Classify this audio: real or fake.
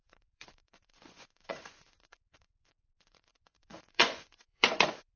fake